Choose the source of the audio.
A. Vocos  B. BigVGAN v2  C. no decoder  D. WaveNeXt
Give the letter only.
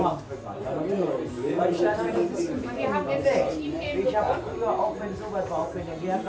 C